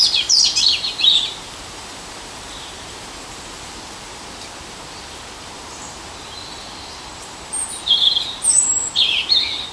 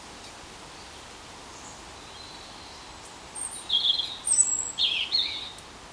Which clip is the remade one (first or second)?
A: first